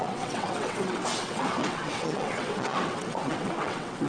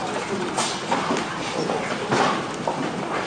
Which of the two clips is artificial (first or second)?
first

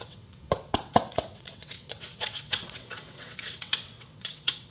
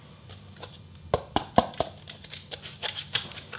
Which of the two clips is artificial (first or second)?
first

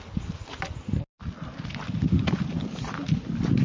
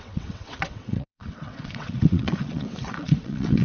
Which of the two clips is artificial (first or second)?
second